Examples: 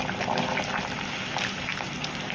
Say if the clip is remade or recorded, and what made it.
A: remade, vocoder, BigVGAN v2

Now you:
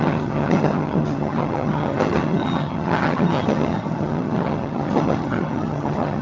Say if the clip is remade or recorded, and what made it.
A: remade, vocoder, HiFi-GAN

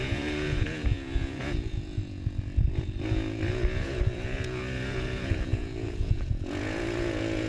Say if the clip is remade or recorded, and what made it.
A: remade, vocoder, Vocos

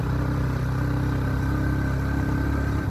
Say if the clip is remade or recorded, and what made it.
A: recorded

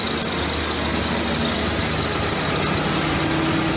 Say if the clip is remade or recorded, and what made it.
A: recorded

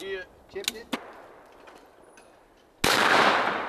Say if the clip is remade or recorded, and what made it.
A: recorded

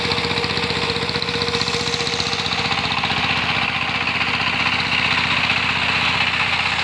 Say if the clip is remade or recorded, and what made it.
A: recorded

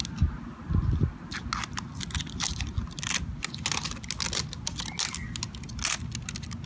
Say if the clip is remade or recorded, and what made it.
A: recorded